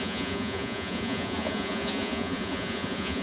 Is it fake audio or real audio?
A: fake